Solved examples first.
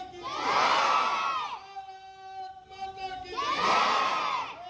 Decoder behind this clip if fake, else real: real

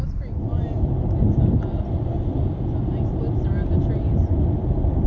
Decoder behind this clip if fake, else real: real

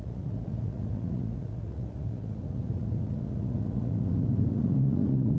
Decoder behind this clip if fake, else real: fake, vocoder, Vocos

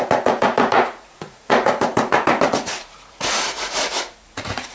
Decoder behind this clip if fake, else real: fake, vocoder, Vocos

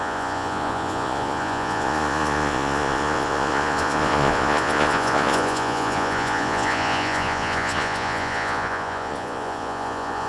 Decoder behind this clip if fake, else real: fake, vocoder, Vocos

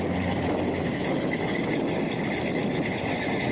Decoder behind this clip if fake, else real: real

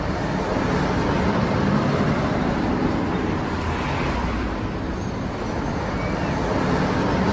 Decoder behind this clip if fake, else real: real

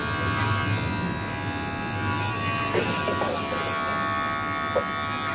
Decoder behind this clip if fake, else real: real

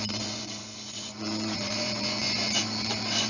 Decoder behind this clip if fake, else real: fake, vocoder, Vocos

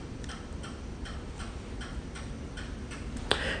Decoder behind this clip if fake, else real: real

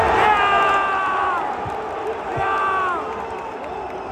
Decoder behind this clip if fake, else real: real